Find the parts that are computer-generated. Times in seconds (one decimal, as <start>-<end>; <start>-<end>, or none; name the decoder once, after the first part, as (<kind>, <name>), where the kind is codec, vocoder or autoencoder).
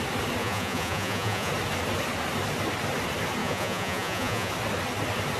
0.4-1.5 (vocoder, Vocos); 3.4-4.5